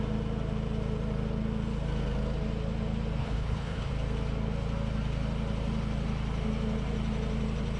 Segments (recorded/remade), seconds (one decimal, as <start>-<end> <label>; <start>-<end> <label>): 0.0-3.2 recorded; 3.2-3.9 remade; 3.9-7.8 recorded

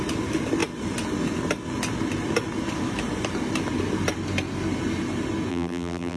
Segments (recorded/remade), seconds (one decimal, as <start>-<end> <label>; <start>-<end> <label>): 0.0-5.5 recorded; 5.5-6.2 remade

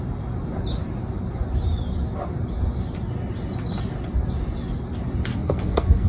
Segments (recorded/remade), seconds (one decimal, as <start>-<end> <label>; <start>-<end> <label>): 0.0-5.3 recorded; 5.3-6.1 remade

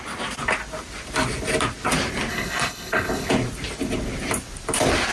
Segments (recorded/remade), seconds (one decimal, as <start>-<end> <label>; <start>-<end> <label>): 0.0-2.3 recorded; 2.3-3.3 remade; 3.3-5.1 recorded